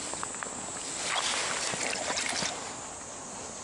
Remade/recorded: recorded